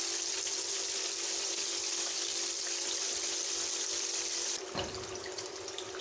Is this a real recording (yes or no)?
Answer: yes